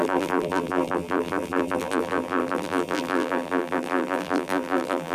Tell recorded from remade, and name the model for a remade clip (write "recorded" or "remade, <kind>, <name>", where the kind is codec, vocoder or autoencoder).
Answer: remade, vocoder, BigVGAN v2